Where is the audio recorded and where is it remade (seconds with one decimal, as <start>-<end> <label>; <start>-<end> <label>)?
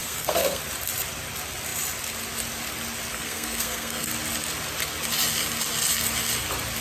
0.0-0.6 remade; 0.6-3.1 recorded; 3.1-4.1 remade; 4.1-6.8 recorded